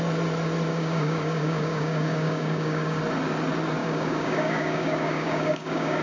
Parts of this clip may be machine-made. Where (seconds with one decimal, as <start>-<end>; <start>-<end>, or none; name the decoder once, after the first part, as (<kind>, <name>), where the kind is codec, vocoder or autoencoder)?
0.7-3.0 (codec, DAC); 3.8-6.0